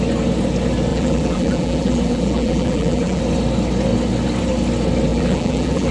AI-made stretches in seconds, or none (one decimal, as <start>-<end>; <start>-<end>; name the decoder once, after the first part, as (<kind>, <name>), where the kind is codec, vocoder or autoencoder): 0.9-3.2 (vocoder, BigVGAN v2); 5.1-5.9

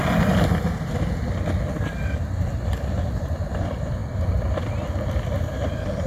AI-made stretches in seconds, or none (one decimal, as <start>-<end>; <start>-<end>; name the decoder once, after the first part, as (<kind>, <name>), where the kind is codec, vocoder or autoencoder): none

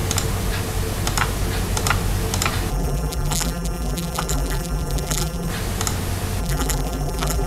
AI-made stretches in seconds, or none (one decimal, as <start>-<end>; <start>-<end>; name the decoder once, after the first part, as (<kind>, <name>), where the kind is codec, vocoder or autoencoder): 2.7-5.5 (vocoder, BigVGAN v2); 6.4-7.5

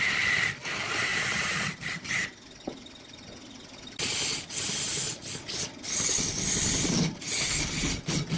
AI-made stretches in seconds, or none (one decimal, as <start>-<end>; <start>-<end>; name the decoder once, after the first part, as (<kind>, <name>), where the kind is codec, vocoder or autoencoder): 1.1-2.7 (vocoder, BigVGAN v2)

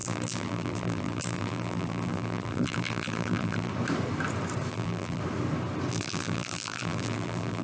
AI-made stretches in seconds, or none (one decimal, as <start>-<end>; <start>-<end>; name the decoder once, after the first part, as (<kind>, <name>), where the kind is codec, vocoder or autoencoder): 0.0-3.7 (vocoder, BigVGAN v2); 4.7-5.2; 5.9-7.6

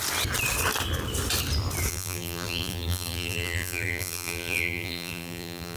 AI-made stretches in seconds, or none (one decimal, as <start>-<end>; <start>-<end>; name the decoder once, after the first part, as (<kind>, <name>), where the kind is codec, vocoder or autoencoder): 1.9-5.8 (vocoder, BigVGAN v2)

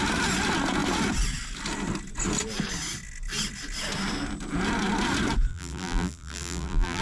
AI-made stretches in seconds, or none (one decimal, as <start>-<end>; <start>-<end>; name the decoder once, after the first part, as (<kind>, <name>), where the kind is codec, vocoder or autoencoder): 5.5-7.0 (vocoder, BigVGAN v2)